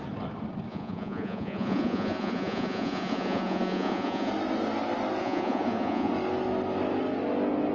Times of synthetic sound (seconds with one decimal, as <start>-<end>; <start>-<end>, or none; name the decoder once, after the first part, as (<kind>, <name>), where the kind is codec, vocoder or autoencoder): 0.7-4.3 (vocoder, Vocos); 5.2-6.1